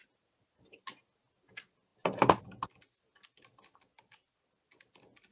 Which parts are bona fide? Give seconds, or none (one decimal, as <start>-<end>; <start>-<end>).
0.0-5.3